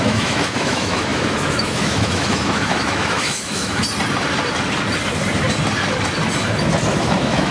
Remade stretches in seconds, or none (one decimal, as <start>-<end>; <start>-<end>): 0.0-3.8; 6.9-7.5